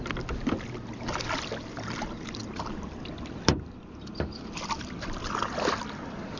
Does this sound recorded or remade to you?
recorded